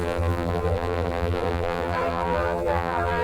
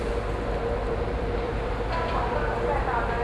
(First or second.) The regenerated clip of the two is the first